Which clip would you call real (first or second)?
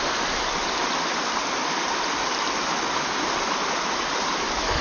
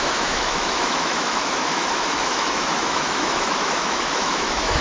first